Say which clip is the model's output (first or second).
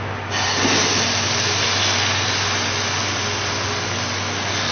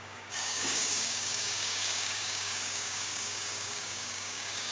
second